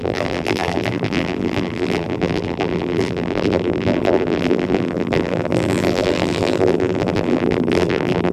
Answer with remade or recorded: remade